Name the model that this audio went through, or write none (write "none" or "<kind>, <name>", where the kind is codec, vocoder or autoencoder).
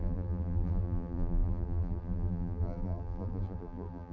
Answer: vocoder, BigVGAN v2